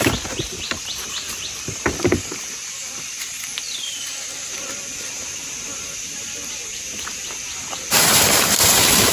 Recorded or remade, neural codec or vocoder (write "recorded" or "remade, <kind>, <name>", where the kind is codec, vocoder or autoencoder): remade, vocoder, BigVGAN v2